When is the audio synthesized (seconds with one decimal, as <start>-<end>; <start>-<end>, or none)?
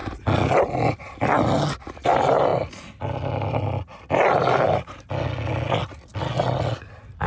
none